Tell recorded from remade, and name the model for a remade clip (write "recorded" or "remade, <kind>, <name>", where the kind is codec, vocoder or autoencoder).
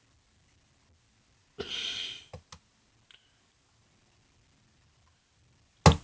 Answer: recorded